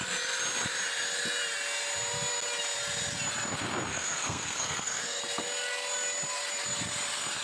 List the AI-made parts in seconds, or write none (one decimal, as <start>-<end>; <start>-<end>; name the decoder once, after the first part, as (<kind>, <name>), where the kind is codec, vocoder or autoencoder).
3.9-5.2 (codec, SNAC)